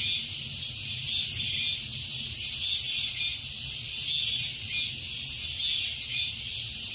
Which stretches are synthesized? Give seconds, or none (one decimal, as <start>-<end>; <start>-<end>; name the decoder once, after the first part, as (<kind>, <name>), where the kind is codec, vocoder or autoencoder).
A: 0.8-1.5 (vocoder, BigVGAN v2); 1.9-3.2; 5.7-6.9

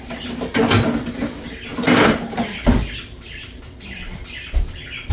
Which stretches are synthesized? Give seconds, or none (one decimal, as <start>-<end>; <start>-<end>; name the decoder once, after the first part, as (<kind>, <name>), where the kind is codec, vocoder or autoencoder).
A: 1.7-4.3 (vocoder, BigVGAN v2)

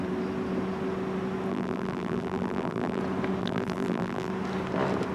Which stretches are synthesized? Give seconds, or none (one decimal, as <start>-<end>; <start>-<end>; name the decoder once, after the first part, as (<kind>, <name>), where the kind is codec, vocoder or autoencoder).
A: 1.5-3.0 (vocoder, BigVGAN v2); 3.4-4.3